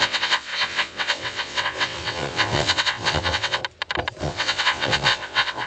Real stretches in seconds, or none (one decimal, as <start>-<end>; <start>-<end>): 3.6-4.2